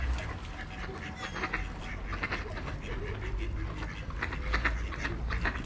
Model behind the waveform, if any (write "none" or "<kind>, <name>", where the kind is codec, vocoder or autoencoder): none